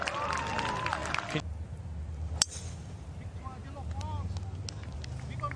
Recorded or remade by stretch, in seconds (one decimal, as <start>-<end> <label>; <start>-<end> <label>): 0.0-5.6 recorded

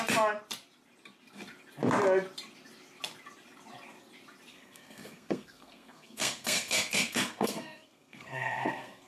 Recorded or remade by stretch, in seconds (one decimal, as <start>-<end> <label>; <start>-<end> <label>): 0.0-4.5 recorded; 4.5-9.1 remade

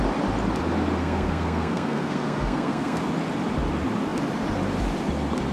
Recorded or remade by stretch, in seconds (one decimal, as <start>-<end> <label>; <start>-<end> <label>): 0.0-1.0 recorded; 1.0-3.1 remade; 3.1-5.5 recorded

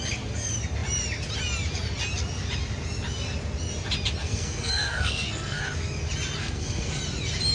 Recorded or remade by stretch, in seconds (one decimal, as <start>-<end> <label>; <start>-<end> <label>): 0.0-4.2 recorded; 4.2-5.6 remade; 5.6-6.4 recorded; 6.4-7.0 remade; 7.0-7.5 recorded

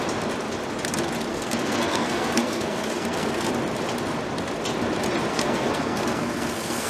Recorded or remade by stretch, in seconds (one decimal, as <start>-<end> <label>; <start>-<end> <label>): 0.0-1.3 recorded; 1.3-3.5 remade; 3.5-5.3 recorded; 5.3-6.9 remade

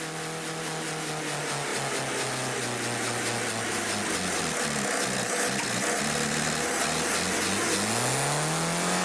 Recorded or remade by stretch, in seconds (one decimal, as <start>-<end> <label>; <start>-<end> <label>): 0.0-9.0 recorded

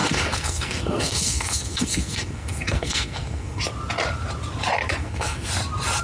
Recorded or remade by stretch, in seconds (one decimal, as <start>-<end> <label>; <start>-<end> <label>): 0.0-3.6 remade; 3.6-5.0 recorded; 5.0-5.5 remade; 5.5-6.0 recorded

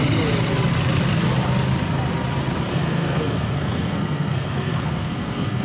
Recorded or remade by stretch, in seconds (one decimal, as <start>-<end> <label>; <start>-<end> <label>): 0.0-2.7 recorded; 2.7-5.6 remade